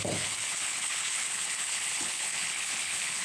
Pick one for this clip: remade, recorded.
remade